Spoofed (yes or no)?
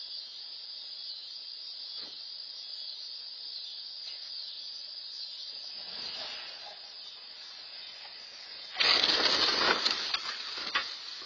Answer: no